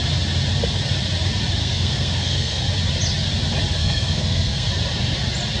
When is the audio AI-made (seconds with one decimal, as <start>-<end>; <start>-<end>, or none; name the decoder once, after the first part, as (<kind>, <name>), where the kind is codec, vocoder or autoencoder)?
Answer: 1.6-2.6 (codec, SNAC); 3.8-4.7